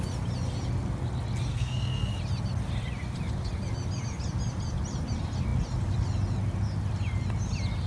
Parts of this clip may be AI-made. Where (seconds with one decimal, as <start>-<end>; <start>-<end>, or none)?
1.5-2.1